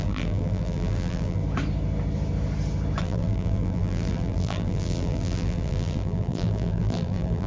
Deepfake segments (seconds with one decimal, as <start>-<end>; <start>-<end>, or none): 0.0-1.4; 3.0-7.5